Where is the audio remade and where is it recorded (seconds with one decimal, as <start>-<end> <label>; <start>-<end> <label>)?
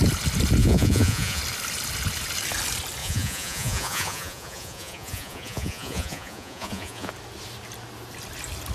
0.0-0.6 recorded; 0.6-1.4 remade; 1.4-3.0 recorded; 3.0-7.1 remade; 7.1-8.7 recorded